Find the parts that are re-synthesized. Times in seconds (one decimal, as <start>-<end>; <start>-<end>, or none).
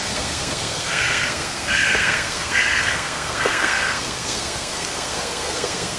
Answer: 0.0-6.0